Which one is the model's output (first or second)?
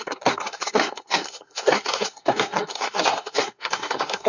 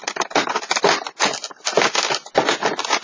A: first